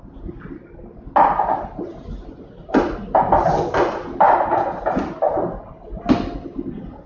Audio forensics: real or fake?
real